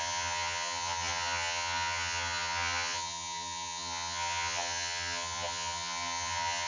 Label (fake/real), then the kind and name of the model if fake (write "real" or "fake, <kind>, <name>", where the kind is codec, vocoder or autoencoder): fake, vocoder, HiFi-GAN